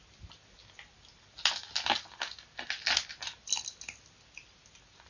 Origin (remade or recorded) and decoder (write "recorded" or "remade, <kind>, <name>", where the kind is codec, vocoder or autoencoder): recorded